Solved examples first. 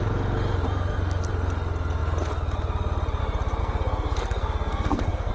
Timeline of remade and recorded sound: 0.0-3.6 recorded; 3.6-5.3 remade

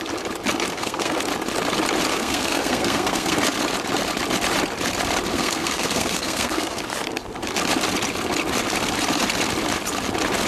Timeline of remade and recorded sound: 0.0-0.7 recorded; 0.7-1.2 remade; 1.2-2.1 recorded; 2.1-3.4 remade; 3.4-5.3 recorded; 5.3-6.8 remade; 6.8-10.5 recorded

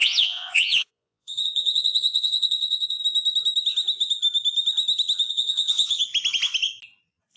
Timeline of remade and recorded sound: 0.0-3.0 remade; 3.0-5.3 recorded; 5.3-6.0 remade; 6.0-7.4 recorded